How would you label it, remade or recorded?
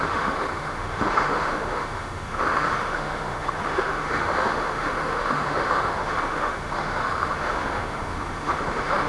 remade